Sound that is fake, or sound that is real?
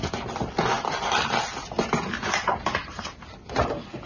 real